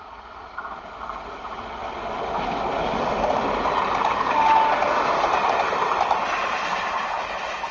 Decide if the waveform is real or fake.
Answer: real